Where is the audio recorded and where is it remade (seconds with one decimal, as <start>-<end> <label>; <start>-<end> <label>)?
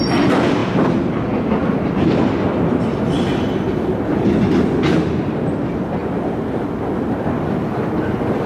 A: 0.0-8.5 recorded